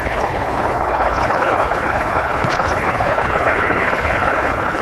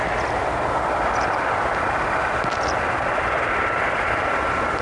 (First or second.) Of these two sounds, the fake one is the first